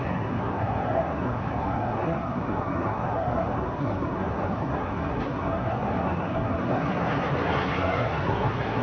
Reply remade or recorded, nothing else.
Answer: remade